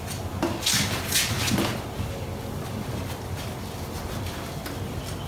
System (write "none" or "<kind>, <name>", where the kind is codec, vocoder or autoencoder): none